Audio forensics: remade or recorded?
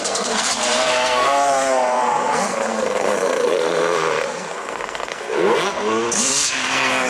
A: remade